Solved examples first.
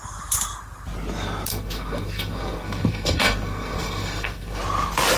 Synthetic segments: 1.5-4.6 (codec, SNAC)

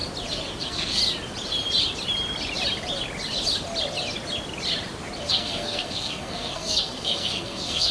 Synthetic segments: 0.6-1.0 (codec, SNAC); 5.3-7.9

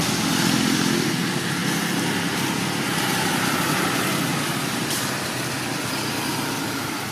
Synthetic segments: none

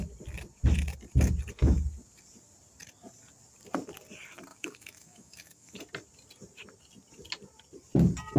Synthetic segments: 4.5-5.8 (autoencoder, DAC-VAE)

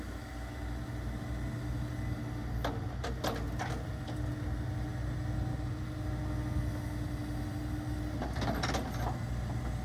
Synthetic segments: none